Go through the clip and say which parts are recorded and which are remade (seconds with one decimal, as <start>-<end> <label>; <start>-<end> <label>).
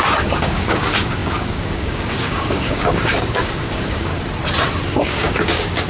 0.0-4.1 remade; 4.1-4.9 recorded; 4.9-5.9 remade